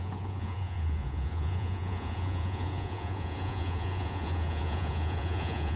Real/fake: fake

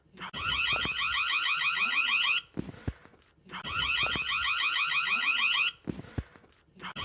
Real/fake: real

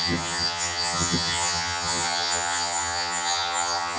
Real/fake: fake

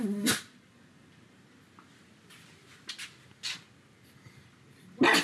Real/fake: real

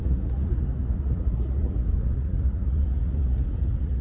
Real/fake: fake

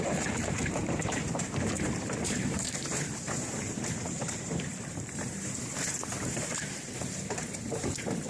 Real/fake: fake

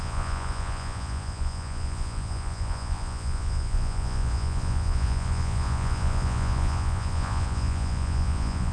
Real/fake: fake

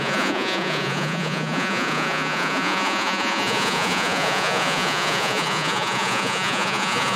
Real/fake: fake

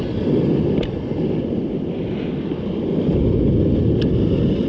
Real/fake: real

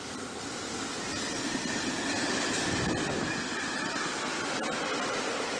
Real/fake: real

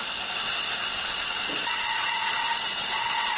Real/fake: real